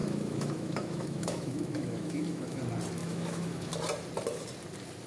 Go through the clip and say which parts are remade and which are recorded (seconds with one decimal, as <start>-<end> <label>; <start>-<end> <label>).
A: 0.0-2.6 remade; 2.6-3.0 recorded; 3.0-3.7 remade; 3.7-5.1 recorded